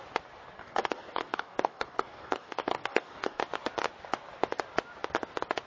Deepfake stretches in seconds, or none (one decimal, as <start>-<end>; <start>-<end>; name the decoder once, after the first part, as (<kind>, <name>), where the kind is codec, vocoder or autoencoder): 0.6-3.4 (codec, DAC)